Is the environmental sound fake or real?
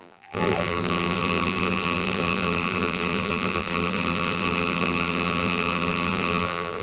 fake